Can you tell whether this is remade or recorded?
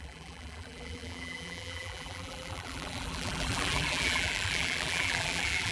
remade